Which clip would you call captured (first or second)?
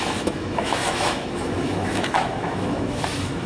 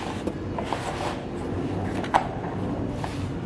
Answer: second